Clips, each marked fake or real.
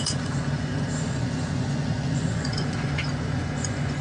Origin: fake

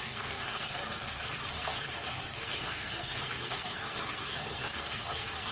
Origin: fake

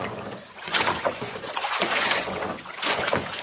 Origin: fake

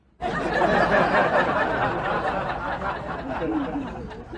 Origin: real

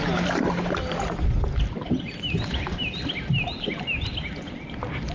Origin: real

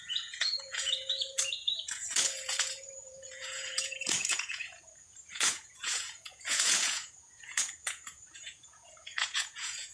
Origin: fake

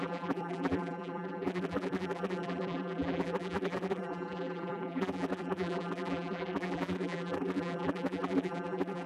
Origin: fake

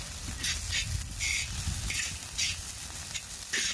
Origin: real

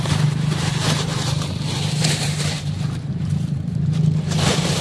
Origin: fake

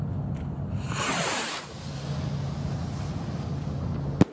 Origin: real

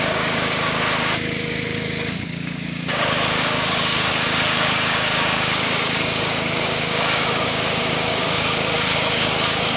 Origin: fake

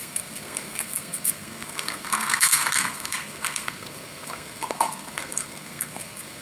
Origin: fake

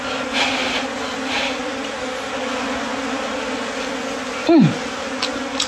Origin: real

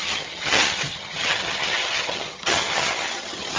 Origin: fake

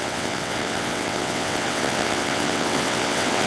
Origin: fake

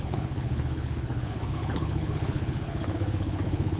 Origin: fake